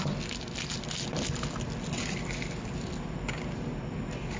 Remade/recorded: recorded